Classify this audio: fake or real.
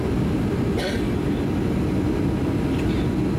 real